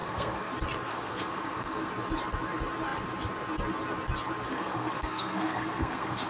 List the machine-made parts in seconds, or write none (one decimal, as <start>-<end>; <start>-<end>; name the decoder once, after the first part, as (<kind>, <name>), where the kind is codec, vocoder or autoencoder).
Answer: 0.0-0.5 (codec, SNAC); 0.9-1.9; 4.5-6.3